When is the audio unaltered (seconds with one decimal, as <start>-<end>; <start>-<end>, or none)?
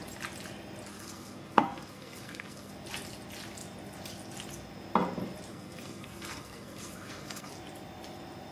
0.0-0.9; 2.7-5.5; 7.5-8.5